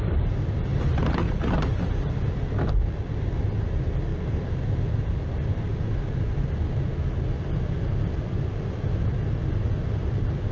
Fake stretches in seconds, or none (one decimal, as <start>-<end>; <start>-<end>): 0.7-2.7

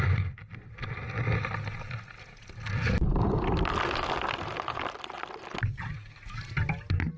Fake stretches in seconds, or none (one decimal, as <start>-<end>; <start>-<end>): none

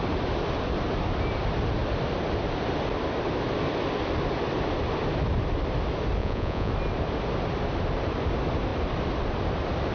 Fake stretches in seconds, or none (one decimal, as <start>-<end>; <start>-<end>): 6.2-6.7

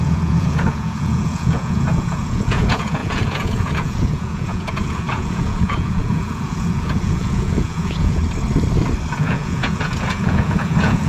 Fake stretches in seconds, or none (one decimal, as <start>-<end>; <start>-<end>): 0.0-8.2; 9.1-11.1

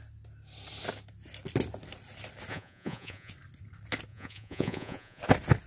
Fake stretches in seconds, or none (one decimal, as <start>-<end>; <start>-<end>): 2.5-3.3; 4.1-5.2